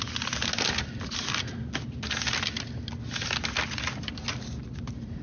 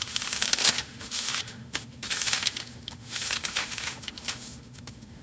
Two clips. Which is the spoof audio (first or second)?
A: second